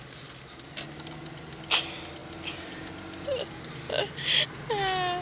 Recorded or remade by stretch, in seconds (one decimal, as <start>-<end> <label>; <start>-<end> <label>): 0.0-5.2 recorded